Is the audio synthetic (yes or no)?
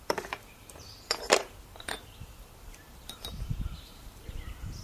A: yes